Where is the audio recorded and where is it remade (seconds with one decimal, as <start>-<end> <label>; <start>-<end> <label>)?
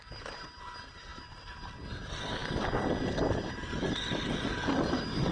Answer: 0.0-5.3 recorded